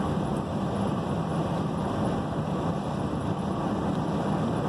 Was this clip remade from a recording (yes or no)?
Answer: no